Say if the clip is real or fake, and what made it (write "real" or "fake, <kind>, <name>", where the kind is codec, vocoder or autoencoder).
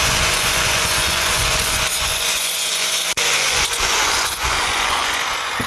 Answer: fake, vocoder, Vocos